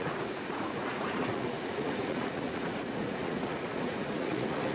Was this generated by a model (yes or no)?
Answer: yes